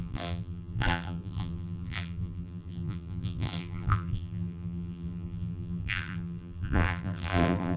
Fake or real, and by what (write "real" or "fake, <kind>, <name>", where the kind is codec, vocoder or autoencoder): fake, vocoder, BigVGAN v2